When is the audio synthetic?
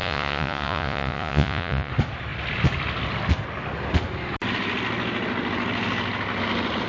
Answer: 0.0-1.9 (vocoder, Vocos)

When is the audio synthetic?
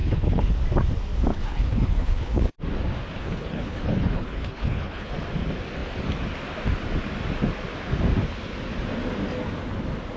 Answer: 0.0-0.5 (codec, HILCodec); 1.3-2.5; 3.2-5.1